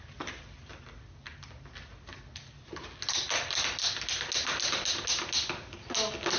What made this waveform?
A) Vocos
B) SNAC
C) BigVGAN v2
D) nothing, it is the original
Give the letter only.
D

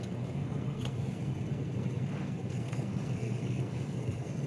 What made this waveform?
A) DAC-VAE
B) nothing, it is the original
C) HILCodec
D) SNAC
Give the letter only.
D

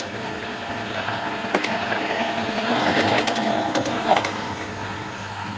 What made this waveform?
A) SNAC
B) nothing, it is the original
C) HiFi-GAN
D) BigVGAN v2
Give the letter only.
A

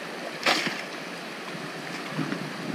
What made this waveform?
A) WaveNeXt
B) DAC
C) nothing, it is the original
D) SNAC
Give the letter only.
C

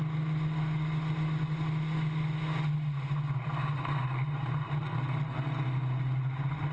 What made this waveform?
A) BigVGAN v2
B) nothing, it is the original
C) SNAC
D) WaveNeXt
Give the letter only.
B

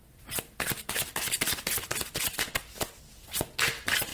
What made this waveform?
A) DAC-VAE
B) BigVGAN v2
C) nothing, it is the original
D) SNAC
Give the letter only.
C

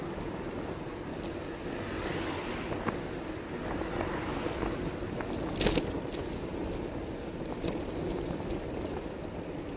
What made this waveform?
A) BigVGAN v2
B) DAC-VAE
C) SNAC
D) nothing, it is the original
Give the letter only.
D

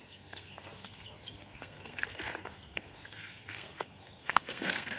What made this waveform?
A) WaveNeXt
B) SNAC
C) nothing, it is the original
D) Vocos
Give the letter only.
B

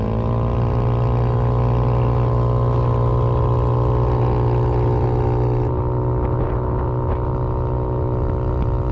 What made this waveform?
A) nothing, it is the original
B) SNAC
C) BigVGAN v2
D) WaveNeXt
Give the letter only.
A